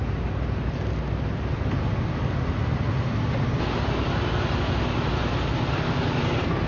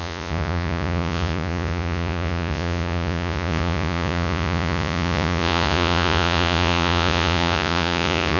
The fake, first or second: second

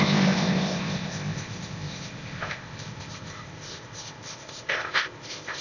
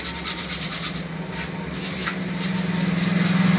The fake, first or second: first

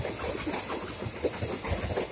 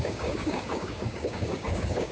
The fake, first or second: second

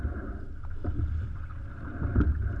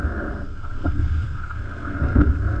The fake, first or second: second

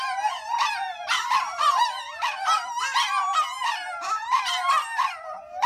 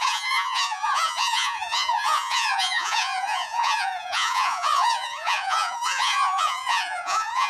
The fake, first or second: second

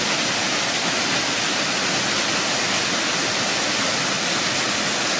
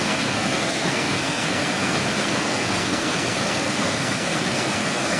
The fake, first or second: second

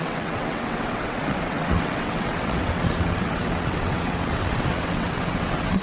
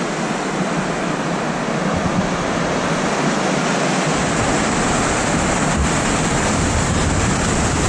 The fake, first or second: first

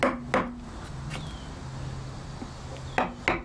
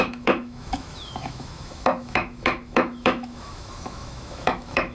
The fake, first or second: second